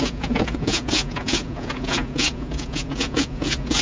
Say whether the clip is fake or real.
fake